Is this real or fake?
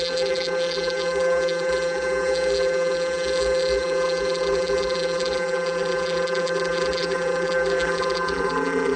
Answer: fake